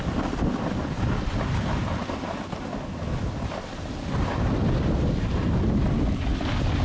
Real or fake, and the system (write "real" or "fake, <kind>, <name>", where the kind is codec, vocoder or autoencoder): real